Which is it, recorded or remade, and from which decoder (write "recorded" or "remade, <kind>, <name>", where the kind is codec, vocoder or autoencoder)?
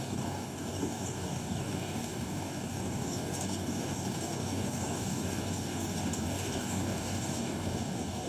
remade, codec, DAC